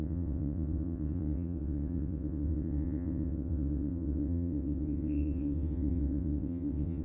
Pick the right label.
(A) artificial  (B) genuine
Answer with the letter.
A